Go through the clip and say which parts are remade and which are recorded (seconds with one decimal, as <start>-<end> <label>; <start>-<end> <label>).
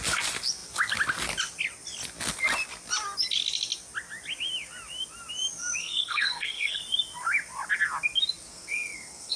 0.0-5.8 recorded; 5.8-6.8 remade; 6.8-8.5 recorded; 8.5-9.4 remade